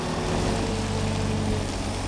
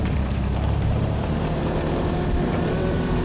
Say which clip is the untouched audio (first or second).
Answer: first